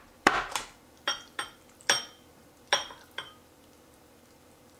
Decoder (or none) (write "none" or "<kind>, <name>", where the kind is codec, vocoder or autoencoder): vocoder, BigVGAN v2